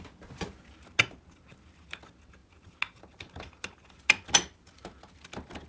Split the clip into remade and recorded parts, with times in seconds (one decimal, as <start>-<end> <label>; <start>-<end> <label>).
0.0-5.7 recorded